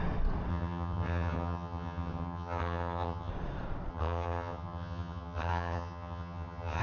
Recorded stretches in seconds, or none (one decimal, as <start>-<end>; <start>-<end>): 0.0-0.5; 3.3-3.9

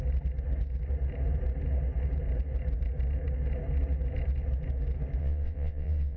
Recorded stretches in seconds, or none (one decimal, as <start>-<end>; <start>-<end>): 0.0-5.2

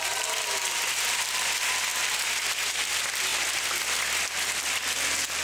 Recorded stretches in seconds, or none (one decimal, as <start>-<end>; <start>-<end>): 0.0-5.4

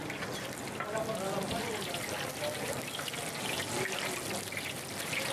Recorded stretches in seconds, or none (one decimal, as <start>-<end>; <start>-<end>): 0.0-5.3

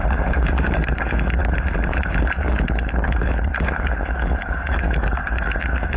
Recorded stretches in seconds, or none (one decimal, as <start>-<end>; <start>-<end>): 1.4-2.2

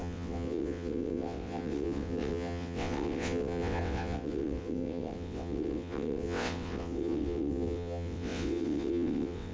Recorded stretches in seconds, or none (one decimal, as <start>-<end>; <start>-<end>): none

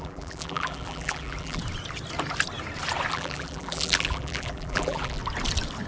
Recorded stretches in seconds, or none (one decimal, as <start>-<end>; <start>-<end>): 1.6-3.1; 5.2-5.9

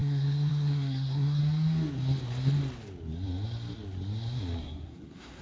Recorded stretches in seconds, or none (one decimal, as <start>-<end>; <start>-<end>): 1.4-4.6